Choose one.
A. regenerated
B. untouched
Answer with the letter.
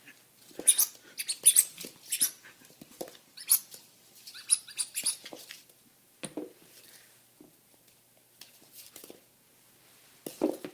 B